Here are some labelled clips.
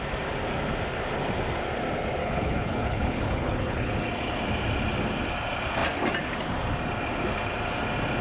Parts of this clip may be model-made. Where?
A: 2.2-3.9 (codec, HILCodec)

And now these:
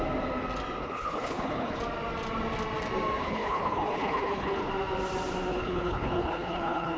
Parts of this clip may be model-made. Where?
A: 0.8-1.8 (codec, HILCodec); 3.2-4.7; 5.5-7.0

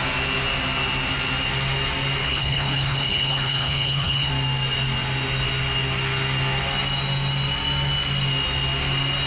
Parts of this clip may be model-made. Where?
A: 2.2-4.3 (codec, HILCodec)

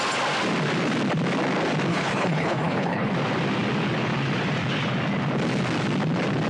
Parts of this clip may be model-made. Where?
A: 1.9-3.1 (codec, HILCodec)

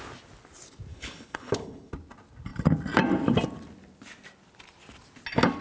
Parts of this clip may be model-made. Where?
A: 0.9-1.9 (codec, HILCodec)

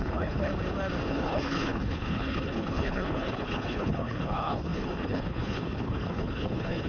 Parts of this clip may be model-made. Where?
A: 0.0-0.5 (codec, HILCodec); 1.1-6.9

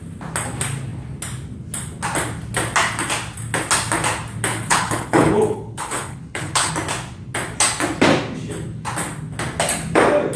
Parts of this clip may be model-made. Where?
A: 4.5-6.7 (codec, HILCodec)